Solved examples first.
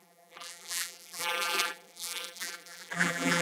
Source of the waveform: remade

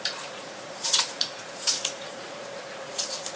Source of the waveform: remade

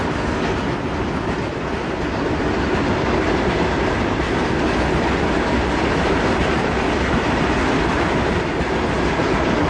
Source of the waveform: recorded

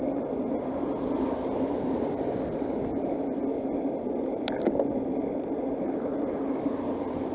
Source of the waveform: recorded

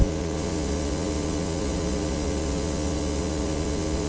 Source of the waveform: remade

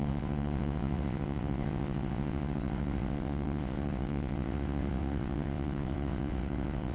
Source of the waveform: remade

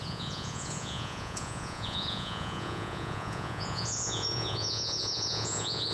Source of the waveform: remade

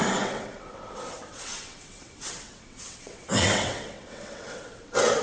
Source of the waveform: remade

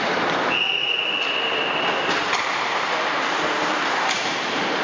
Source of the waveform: recorded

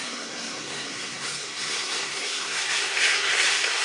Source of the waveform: remade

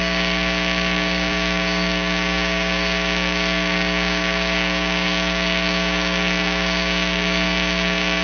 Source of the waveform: remade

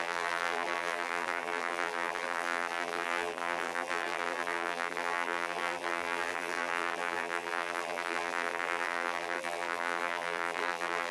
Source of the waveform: remade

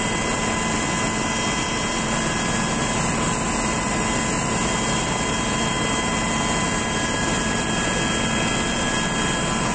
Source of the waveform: recorded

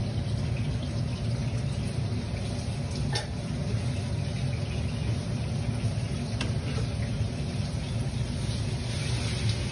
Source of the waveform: recorded